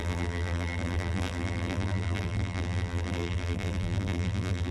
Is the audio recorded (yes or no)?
no